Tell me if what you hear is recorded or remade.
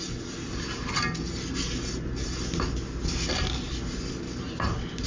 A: recorded